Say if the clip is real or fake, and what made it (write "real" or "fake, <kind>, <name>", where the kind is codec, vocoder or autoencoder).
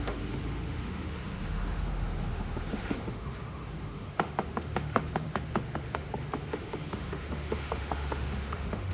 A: fake, autoencoder, DAC-VAE